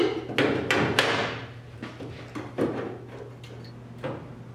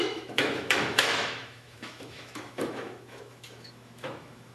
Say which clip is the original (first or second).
first